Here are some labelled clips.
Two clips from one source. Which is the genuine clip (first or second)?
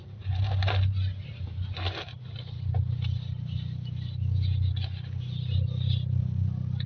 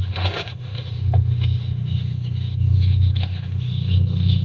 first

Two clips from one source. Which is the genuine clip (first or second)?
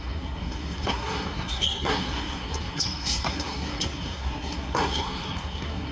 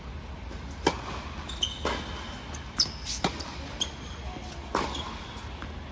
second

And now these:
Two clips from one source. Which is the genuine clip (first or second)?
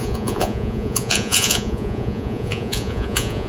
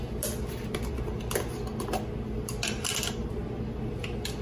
second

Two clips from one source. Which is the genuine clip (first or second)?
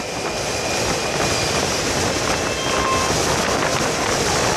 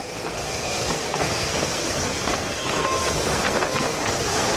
first